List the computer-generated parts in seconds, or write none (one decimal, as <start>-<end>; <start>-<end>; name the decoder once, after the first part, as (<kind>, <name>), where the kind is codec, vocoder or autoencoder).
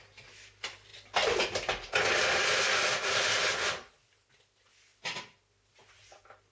none